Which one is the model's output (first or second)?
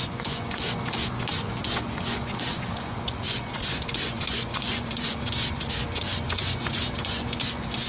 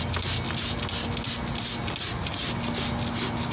first